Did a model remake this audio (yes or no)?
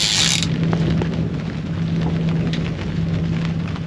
no